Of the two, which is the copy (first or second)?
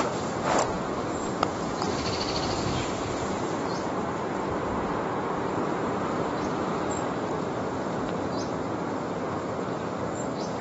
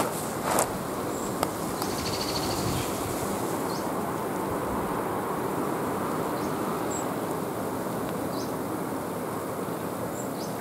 first